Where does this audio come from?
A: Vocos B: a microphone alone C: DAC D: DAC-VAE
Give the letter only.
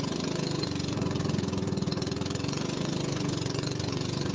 A